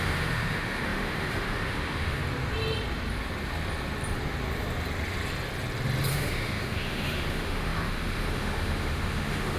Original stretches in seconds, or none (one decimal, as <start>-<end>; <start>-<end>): 2.2-6.1